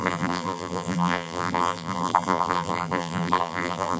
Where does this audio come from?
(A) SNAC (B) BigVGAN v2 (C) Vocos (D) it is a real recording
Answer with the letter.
B